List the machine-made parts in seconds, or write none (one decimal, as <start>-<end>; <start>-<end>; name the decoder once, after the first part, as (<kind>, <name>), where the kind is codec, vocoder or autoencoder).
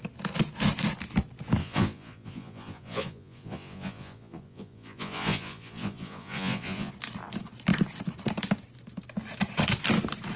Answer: 1.6-6.9 (vocoder, Vocos)